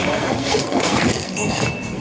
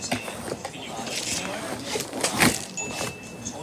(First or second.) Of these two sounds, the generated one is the first